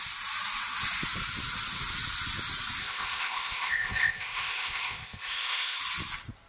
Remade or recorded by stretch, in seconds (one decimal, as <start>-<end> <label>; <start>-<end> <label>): 0.0-2.8 recorded; 2.8-5.8 remade; 5.8-6.5 recorded

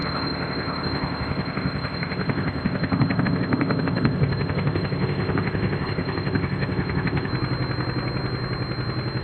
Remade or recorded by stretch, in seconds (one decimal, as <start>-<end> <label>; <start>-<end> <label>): 0.0-7.3 remade; 7.3-9.2 recorded

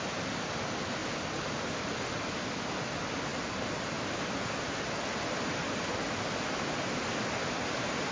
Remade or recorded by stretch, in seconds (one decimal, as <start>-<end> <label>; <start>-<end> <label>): 0.0-8.1 recorded

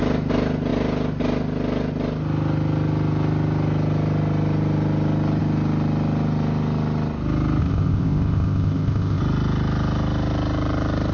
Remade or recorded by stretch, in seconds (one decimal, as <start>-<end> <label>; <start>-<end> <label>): 0.0-7.6 recorded; 7.6-9.2 remade; 9.2-11.1 recorded